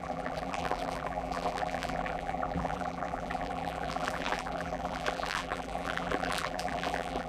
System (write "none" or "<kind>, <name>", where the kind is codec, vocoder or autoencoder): vocoder, BigVGAN v2